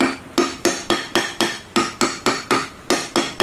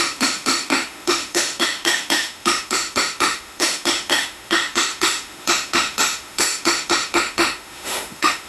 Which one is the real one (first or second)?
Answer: first